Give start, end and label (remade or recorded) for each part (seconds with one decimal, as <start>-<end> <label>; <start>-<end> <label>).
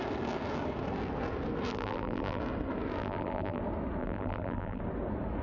0.0-1.7 recorded; 1.7-2.4 remade; 2.4-3.0 recorded; 3.0-3.6 remade; 3.6-4.0 recorded; 4.0-4.8 remade; 4.8-5.4 recorded